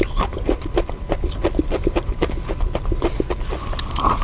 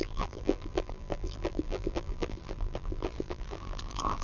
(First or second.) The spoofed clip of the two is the second